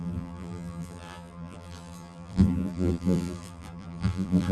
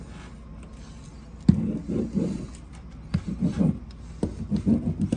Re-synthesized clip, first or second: first